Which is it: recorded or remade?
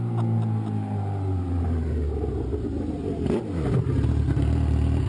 recorded